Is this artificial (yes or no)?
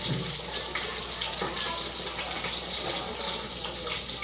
no